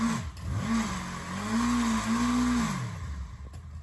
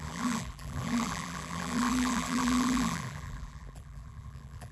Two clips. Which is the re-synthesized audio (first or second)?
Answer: second